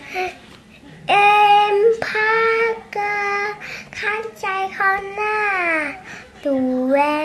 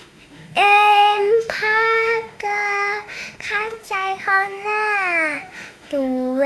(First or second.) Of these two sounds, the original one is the first